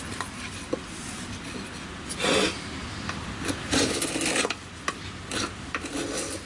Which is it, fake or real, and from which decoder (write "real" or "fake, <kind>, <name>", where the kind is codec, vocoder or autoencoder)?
real